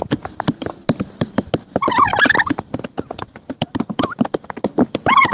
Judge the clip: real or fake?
real